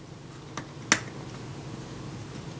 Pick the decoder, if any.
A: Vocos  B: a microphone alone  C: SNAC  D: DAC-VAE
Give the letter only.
B